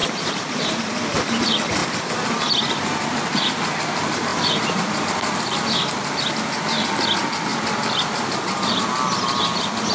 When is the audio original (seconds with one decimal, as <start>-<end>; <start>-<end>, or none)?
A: 0.6-4.3; 5.0-7.5; 8.6-9.9

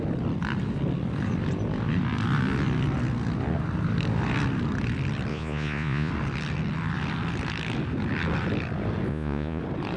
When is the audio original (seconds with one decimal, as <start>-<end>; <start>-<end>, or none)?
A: 0.0-5.3; 6.1-9.1; 9.6-10.0

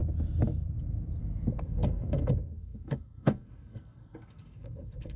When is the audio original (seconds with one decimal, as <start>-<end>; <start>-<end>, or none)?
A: 0.0-1.6

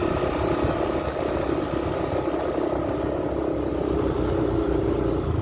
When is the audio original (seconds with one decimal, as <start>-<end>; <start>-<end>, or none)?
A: 0.0-5.4

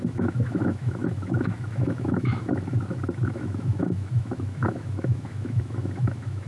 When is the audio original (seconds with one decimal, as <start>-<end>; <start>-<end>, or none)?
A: 2.5-3.3

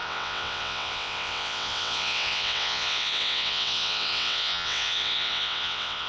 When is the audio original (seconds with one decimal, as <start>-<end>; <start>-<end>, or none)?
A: none

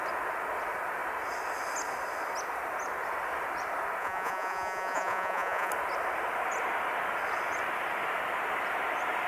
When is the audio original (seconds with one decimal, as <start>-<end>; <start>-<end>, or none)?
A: 0.0-4.0; 5.7-9.3

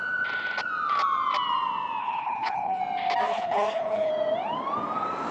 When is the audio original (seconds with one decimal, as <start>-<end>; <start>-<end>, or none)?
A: 0.0-2.0; 2.8-3.3; 4.1-5.3